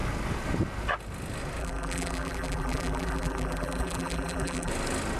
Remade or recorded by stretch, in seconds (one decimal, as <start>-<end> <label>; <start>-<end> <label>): 0.0-1.6 recorded; 1.6-4.7 remade; 4.7-5.2 recorded